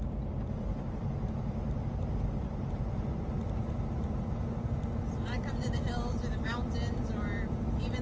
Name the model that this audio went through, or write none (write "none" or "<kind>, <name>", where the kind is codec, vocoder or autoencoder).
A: none